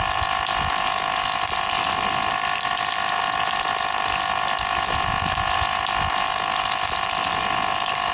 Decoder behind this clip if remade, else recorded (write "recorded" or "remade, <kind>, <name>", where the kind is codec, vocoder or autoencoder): remade, vocoder, BigVGAN v2